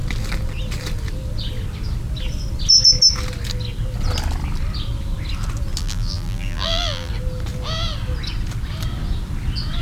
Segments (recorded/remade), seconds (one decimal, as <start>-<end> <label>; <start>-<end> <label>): 0.0-5.8 recorded; 5.8-7.1 remade; 7.1-9.8 recorded